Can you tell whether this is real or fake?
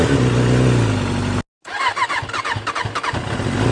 real